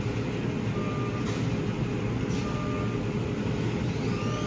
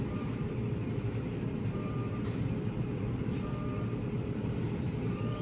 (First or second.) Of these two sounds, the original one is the first